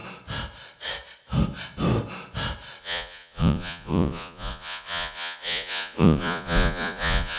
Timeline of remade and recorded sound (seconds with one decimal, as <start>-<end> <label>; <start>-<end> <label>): 0.0-2.8 recorded; 2.8-7.4 remade